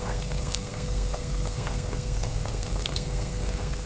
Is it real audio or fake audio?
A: fake